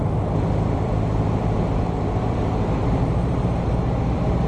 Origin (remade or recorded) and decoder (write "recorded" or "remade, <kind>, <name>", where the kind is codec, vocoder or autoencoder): remade, vocoder, BigVGAN v2